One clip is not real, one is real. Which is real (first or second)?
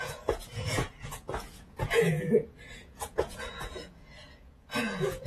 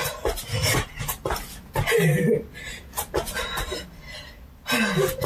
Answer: second